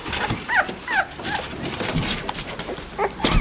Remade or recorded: recorded